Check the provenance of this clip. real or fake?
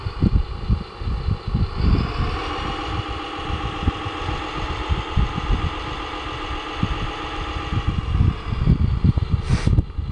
real